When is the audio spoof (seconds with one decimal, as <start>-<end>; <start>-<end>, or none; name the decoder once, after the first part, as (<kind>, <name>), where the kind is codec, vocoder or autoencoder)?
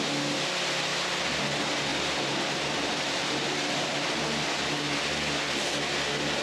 0.9-1.4 (vocoder, BigVGAN v2); 1.9-3.9